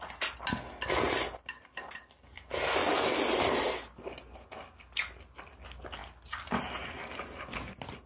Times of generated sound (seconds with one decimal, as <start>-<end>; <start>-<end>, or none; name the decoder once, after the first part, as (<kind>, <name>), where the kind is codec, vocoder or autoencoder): none